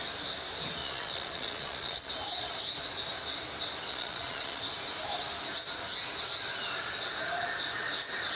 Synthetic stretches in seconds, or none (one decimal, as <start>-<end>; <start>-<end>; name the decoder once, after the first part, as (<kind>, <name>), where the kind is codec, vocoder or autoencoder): 0.8-2.1 (vocoder, Vocos); 3.9-4.6